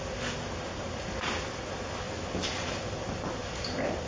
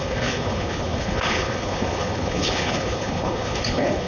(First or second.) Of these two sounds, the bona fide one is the first